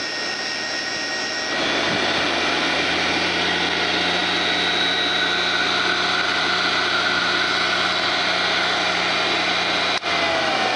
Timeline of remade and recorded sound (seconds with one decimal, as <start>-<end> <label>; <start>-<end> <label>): 0.0-10.8 recorded